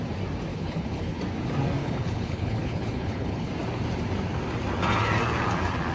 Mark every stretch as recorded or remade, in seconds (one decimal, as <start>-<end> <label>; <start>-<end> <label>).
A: 0.0-0.5 recorded; 0.5-1.2 remade; 1.2-1.8 recorded; 1.8-3.5 remade; 3.5-5.9 recorded